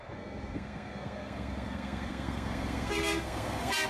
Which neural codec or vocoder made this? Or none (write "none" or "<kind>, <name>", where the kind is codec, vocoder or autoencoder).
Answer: codec, SNAC